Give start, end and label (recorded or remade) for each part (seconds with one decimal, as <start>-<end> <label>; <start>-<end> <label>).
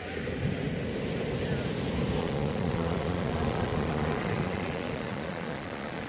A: 0.0-2.2 recorded; 2.2-6.1 remade